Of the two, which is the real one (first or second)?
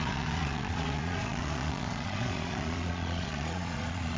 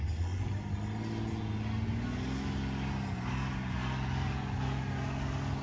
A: second